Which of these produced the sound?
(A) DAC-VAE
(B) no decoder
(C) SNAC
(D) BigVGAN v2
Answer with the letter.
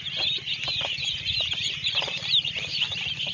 D